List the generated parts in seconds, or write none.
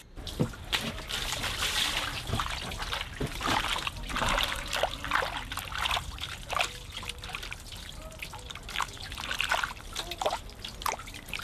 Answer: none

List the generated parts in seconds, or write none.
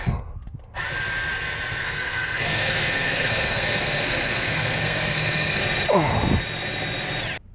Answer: 1.8-5.6 (codec, SNAC)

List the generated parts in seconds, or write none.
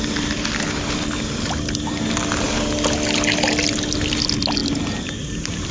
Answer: none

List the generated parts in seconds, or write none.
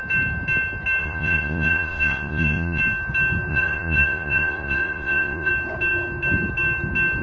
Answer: 1.0-2.8 (vocoder, Vocos); 3.5-5.5